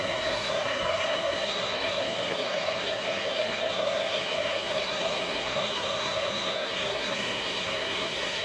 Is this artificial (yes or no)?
yes